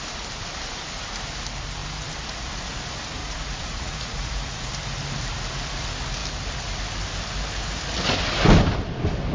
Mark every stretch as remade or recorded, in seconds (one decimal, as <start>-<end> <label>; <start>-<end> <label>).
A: 0.0-3.2 recorded; 3.2-4.7 remade; 4.7-9.3 recorded